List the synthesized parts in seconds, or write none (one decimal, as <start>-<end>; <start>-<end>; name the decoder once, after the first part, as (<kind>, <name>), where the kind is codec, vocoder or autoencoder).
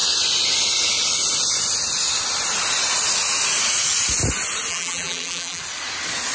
4.7-5.6 (vocoder, BigVGAN v2)